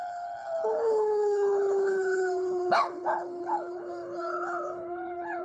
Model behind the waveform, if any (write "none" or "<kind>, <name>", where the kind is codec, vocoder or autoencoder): codec, HILCodec